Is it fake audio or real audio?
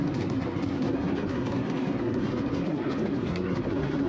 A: fake